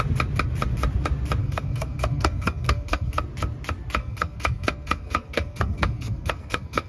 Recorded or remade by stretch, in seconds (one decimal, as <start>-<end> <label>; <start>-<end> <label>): 0.0-1.4 recorded; 1.4-3.2 remade; 3.2-4.0 recorded; 4.0-6.9 remade